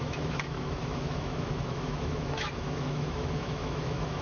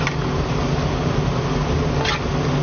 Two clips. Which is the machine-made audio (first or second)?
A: first